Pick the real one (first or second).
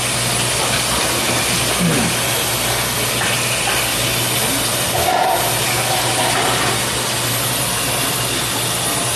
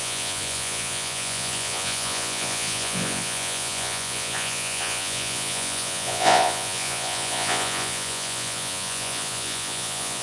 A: first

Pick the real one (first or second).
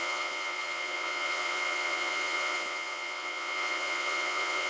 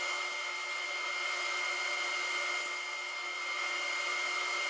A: second